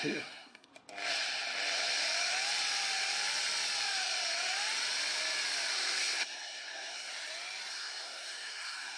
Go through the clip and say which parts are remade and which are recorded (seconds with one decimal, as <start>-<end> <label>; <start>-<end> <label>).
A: 0.0-0.7 remade; 0.7-5.7 recorded; 5.7-7.1 remade; 7.1-7.7 recorded; 7.7-9.0 remade